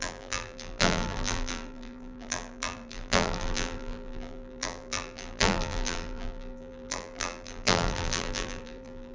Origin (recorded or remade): remade